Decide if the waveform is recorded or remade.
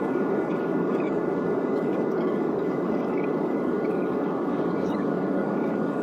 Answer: remade